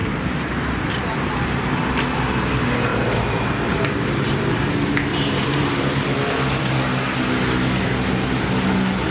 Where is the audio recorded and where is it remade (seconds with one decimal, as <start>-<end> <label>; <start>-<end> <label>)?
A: 0.0-1.3 remade; 1.3-2.9 recorded; 2.9-4.4 remade; 4.4-5.1 recorded; 5.1-6.7 remade; 6.7-9.1 recorded